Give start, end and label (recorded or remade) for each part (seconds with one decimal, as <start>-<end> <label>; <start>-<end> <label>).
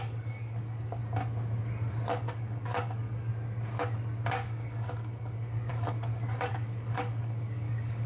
0.0-1.0 remade; 1.0-2.1 recorded; 2.1-3.3 remade; 3.3-4.3 recorded; 4.3-8.1 remade